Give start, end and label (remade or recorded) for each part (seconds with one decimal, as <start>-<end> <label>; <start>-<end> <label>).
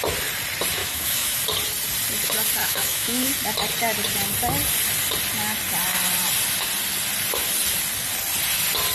0.0-0.8 recorded; 0.8-1.4 remade; 1.4-2.6 recorded; 2.6-3.3 remade; 3.3-8.9 recorded